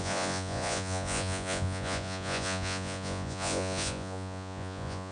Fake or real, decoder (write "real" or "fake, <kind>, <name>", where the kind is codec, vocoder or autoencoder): fake, vocoder, Vocos